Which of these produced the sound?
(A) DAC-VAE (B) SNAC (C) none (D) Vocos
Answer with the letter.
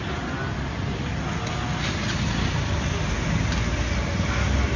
C